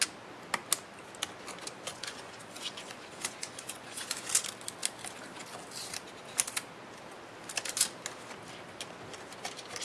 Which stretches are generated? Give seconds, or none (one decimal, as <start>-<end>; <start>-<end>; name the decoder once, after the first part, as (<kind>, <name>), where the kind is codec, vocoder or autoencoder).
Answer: 1.9-4.3 (vocoder, Vocos)